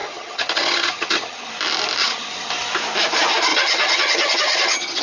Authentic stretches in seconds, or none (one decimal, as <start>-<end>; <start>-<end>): 1.5-2.0; 2.5-3.5